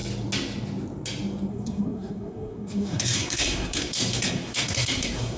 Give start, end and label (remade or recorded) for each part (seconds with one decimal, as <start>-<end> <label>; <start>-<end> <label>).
0.0-1.5 recorded; 1.5-5.4 remade